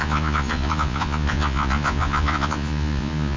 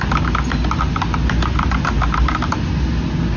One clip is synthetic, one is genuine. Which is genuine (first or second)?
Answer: second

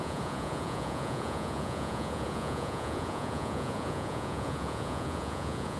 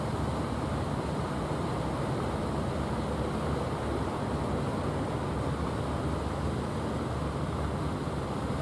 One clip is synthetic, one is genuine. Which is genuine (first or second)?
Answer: second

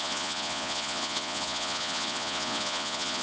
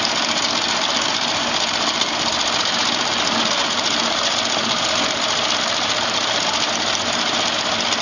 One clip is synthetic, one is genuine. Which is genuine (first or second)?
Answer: second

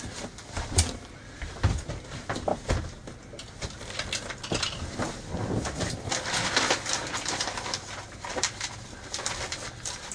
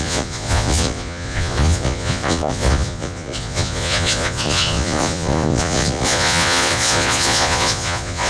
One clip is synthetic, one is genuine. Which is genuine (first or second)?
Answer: first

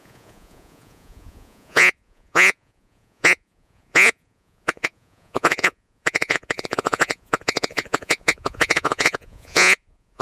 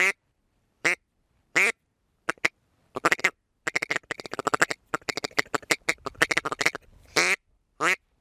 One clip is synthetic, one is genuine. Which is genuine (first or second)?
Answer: second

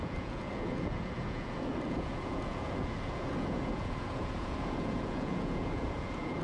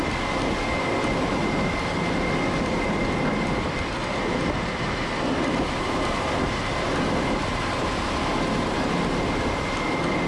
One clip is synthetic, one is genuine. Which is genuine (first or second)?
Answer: second